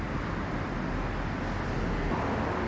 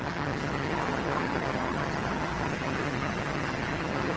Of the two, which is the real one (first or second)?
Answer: first